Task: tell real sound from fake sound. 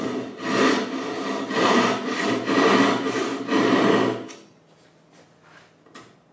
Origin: real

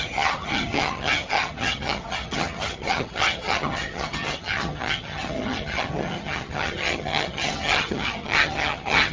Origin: fake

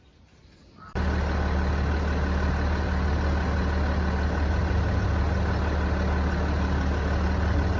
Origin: real